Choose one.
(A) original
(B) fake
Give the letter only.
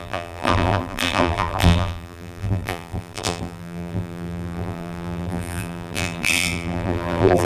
B